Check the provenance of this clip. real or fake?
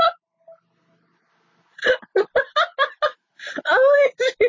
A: real